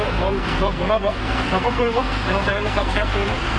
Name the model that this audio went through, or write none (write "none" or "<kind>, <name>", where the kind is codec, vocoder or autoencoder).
codec, SNAC